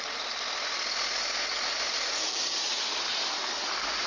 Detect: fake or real fake